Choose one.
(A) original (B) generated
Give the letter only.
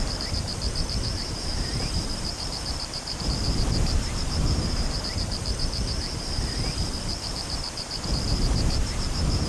B